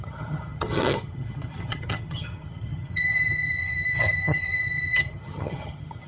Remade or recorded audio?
remade